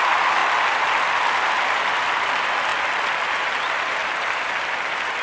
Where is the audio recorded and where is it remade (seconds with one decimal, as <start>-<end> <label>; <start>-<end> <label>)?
0.0-0.4 remade; 0.4-1.5 recorded; 1.5-5.2 remade